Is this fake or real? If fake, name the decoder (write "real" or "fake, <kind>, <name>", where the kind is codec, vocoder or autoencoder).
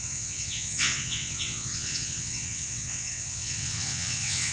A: fake, vocoder, WaveNeXt